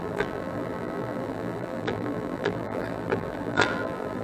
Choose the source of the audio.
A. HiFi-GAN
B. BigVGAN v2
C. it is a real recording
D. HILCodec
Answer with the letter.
B